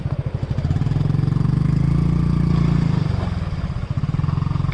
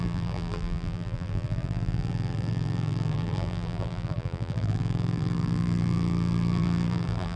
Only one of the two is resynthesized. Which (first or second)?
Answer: second